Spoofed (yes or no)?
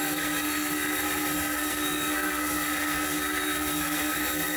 yes